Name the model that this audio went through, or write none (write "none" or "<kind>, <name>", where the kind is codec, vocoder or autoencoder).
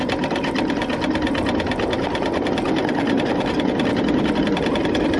none